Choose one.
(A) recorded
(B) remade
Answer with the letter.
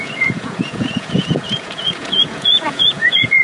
B